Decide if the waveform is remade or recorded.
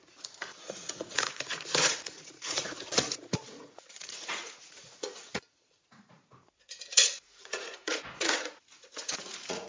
remade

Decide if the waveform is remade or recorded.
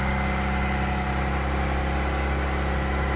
recorded